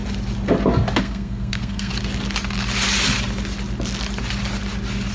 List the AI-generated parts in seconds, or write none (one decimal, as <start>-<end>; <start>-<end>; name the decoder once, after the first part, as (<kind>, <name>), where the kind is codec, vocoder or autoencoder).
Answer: 1.0-1.9 (codec, SNAC)